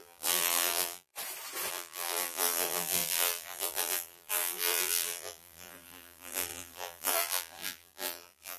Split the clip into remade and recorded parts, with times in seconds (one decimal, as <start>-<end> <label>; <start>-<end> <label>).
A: 0.0-1.1 remade; 1.1-1.7 recorded; 1.7-8.6 remade

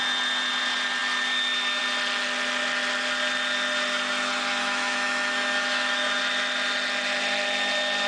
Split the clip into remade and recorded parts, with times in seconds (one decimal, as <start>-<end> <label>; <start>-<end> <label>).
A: 0.0-4.6 recorded; 4.6-6.2 remade; 6.2-8.1 recorded